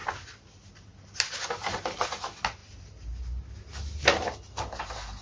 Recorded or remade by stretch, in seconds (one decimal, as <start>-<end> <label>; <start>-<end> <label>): 0.0-5.2 recorded